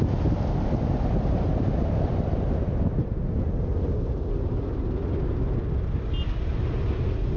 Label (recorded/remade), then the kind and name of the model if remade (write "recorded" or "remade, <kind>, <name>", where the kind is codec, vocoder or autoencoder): recorded